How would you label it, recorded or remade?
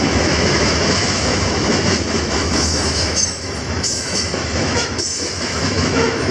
remade